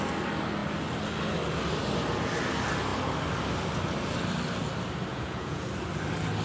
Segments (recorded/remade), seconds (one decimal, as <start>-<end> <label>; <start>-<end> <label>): 0.0-5.1 recorded; 5.1-5.7 remade; 5.7-6.4 recorded